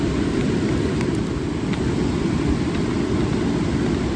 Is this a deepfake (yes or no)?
yes